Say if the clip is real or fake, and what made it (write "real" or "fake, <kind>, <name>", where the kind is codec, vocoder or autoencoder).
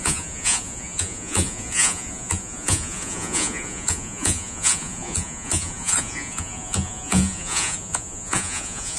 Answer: fake, vocoder, Vocos